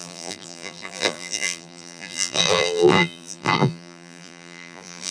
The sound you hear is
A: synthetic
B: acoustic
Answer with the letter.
A